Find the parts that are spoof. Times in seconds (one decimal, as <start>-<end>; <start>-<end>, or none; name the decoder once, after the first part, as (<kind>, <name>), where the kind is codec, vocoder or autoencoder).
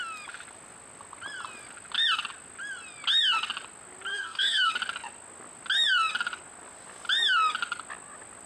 4.1-4.7 (codec, SNAC)